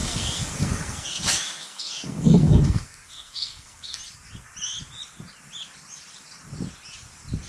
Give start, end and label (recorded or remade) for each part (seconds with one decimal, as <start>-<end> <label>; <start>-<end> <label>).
0.0-4.0 remade; 4.0-7.5 recorded